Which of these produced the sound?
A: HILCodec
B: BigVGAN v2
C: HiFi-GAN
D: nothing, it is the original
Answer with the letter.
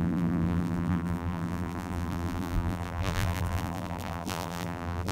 B